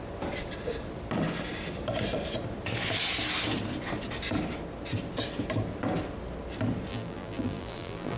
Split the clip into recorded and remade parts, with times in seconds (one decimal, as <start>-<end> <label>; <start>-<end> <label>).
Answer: 0.0-6.9 recorded; 6.9-8.2 remade